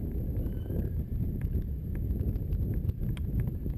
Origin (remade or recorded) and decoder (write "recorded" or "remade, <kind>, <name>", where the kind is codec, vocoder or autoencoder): remade, vocoder, BigVGAN v2